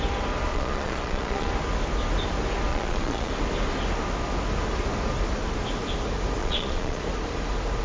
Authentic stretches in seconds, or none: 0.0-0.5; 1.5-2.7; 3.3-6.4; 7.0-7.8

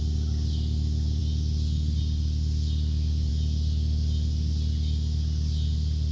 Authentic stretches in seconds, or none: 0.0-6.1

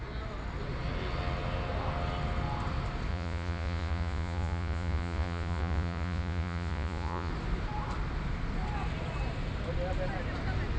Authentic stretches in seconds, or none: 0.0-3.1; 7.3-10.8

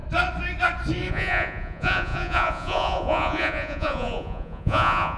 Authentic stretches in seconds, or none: 0.0-1.1

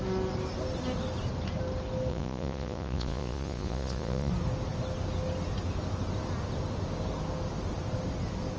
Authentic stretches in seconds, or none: 0.0-2.1; 4.3-8.6

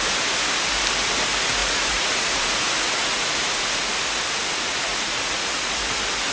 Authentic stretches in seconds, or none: 0.0-1.6; 4.0-4.7; 5.8-6.3

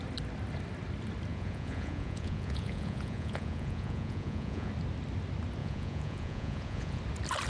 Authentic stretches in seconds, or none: 0.0-1.3; 4.7-5.6; 7.0-7.5